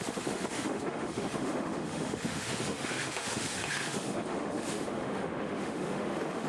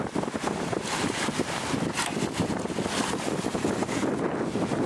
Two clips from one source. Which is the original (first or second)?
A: second